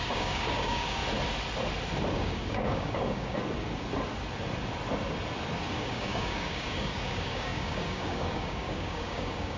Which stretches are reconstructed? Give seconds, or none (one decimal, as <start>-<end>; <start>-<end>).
0.0-1.0; 2.1-3.4; 5.7-9.6